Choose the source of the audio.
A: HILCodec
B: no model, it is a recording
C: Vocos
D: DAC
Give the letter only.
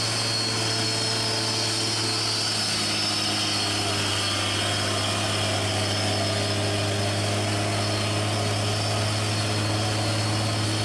B